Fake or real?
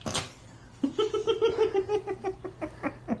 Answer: real